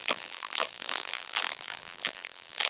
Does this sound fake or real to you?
fake